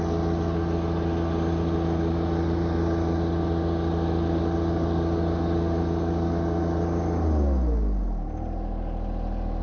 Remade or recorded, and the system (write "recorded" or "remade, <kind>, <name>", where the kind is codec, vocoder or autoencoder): recorded